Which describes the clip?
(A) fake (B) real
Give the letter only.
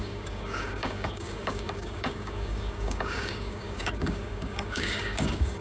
A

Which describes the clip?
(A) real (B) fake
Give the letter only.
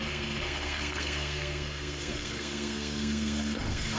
B